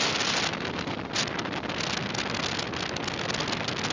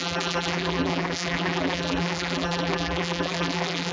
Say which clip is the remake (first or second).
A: second